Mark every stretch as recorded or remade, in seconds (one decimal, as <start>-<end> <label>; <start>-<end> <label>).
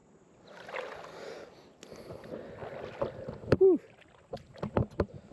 0.0-5.3 recorded